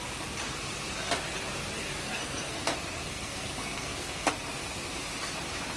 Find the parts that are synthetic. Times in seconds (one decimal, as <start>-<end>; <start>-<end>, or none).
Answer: 2.0-4.3